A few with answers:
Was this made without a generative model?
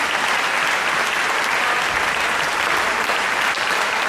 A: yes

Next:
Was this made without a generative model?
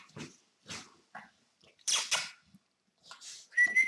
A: yes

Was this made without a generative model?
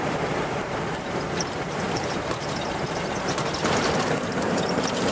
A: no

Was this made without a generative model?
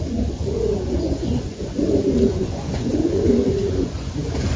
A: no